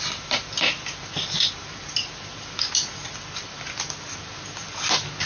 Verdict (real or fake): real